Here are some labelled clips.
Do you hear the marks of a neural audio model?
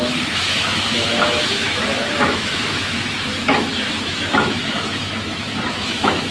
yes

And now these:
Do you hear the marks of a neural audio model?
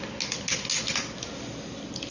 no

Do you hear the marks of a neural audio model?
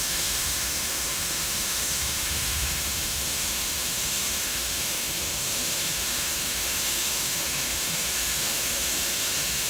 yes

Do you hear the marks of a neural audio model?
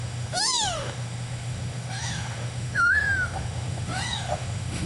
yes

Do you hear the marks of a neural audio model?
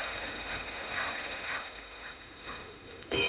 yes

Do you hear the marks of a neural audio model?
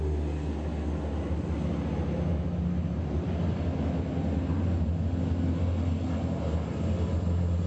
no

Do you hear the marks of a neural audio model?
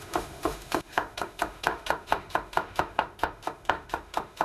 yes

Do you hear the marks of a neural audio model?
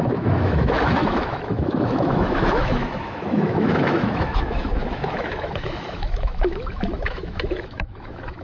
yes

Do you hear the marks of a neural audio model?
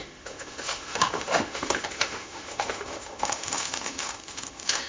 yes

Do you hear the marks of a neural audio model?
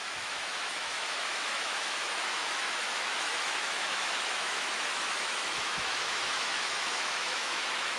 yes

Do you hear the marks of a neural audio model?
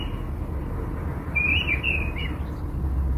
no